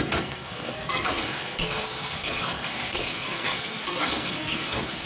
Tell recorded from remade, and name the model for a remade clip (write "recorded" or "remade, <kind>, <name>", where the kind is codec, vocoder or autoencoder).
remade, codec, SNAC